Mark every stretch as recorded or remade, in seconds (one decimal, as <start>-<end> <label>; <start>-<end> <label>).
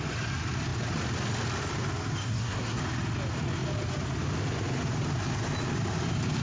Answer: 0.0-2.2 recorded; 2.2-2.8 remade; 2.8-6.4 recorded